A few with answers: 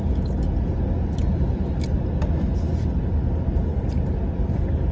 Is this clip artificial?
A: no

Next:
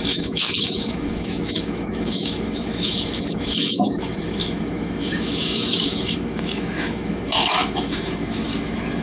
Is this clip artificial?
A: yes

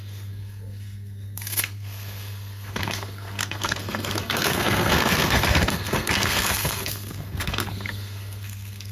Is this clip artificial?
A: yes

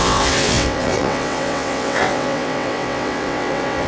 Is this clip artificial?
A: yes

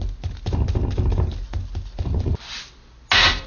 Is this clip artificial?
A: no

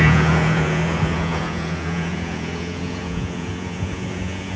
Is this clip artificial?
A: yes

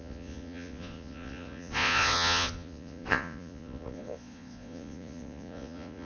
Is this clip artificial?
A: yes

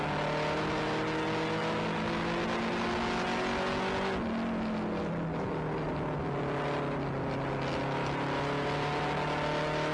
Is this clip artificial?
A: no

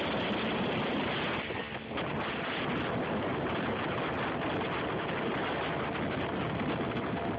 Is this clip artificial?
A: no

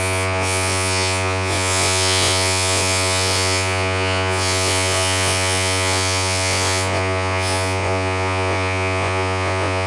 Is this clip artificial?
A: yes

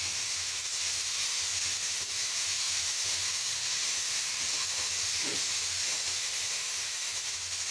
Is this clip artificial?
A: yes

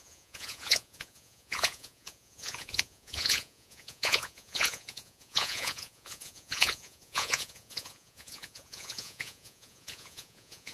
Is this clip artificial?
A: yes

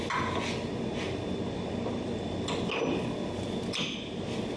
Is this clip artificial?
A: no